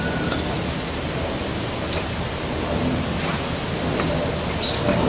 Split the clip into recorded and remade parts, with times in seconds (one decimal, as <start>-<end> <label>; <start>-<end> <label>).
0.0-5.1 recorded